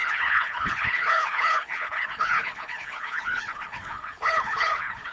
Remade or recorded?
remade